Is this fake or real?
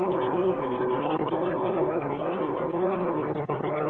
fake